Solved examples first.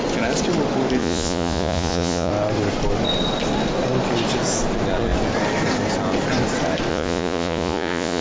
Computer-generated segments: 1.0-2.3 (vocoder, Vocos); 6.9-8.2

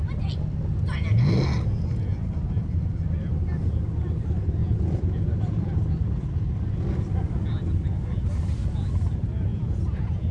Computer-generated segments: 4.6-5.8 (vocoder, Vocos); 9.5-10.3

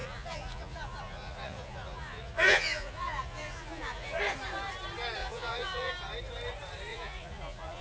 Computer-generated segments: 0.0-4.2 (vocoder, Vocos); 5.2-5.9; 6.9-7.8

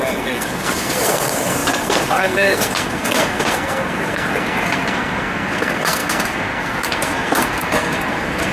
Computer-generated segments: 0.0-8.5 (codec, SNAC)

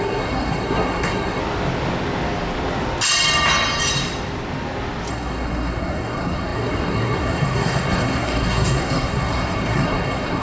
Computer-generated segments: 0.0-1.4 (codec, SNAC); 5.1-10.4

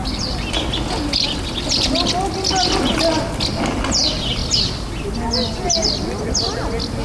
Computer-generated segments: none